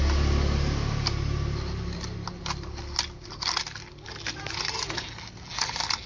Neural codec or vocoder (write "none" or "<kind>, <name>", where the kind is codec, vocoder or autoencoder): none